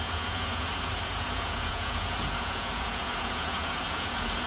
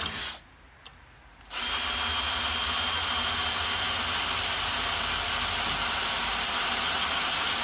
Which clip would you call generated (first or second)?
first